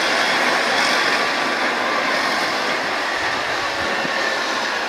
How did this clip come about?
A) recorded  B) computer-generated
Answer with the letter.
A